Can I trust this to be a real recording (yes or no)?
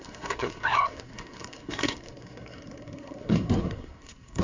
no